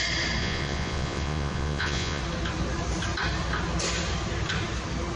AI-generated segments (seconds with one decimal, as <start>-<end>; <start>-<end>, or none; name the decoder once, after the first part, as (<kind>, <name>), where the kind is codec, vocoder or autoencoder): 0.4-2.2 (vocoder, Vocos)